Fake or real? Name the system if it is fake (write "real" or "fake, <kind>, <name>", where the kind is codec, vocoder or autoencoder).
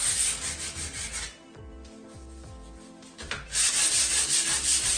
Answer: real